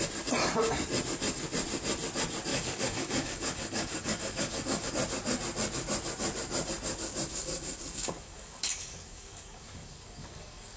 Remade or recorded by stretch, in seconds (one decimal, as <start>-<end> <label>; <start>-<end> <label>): 0.0-2.5 recorded; 2.5-4.9 remade; 4.9-7.3 recorded; 7.3-10.8 remade